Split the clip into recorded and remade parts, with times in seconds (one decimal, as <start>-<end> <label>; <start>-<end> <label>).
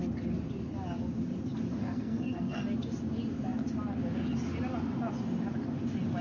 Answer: 0.0-1.8 recorded; 1.8-2.6 remade; 2.6-6.2 recorded